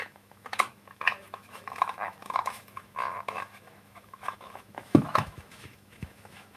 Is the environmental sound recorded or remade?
remade